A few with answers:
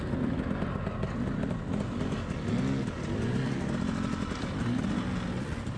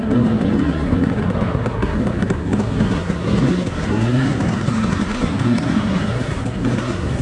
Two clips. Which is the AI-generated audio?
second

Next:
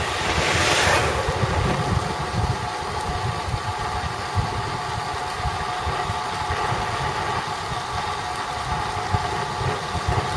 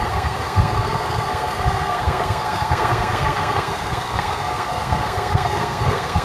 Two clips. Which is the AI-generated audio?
second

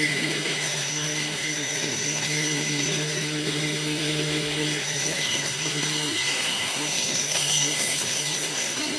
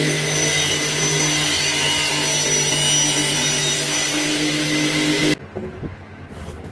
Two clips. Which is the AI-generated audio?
first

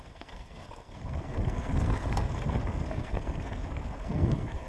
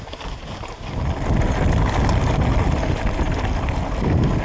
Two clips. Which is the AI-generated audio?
first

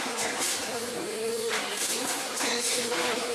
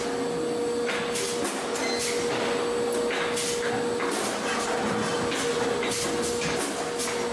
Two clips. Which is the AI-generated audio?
first